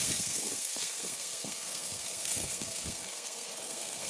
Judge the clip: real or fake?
fake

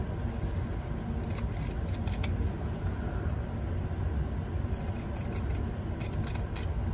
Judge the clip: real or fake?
real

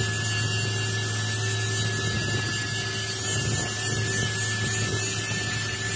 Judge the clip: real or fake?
real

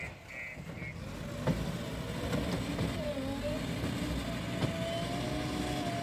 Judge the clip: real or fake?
real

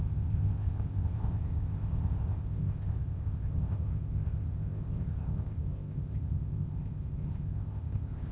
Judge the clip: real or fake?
fake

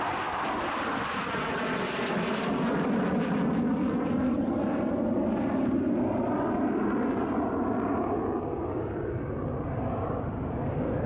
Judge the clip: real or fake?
real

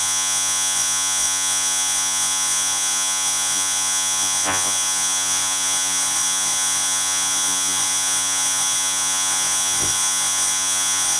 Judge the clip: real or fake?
fake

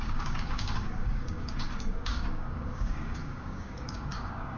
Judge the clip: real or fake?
fake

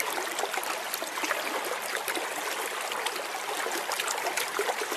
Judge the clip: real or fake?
real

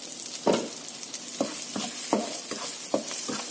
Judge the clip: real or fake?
real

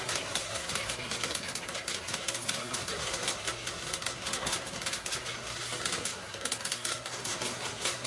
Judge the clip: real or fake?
fake